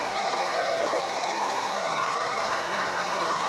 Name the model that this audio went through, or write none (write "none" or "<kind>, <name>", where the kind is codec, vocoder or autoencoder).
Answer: codec, SNAC